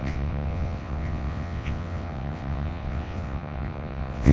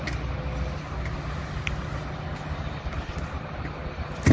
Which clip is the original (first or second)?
second